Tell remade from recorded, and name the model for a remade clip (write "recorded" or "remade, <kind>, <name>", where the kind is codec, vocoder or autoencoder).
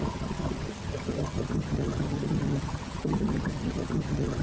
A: remade, vocoder, HiFi-GAN